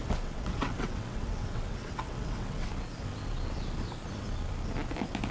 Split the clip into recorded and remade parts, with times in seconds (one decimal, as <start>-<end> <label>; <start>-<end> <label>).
0.0-2.7 remade; 2.7-5.3 recorded